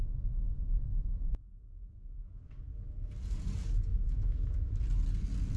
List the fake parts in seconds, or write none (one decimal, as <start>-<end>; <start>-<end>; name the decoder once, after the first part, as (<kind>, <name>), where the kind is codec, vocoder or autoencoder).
0.0-2.5 (autoencoder, DAC-VAE); 3.9-4.8